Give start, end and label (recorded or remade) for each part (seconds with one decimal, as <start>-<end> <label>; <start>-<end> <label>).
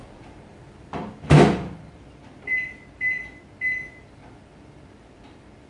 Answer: 0.0-3.2 remade; 3.2-4.0 recorded; 4.0-5.7 remade